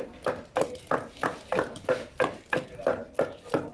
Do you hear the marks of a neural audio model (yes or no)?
no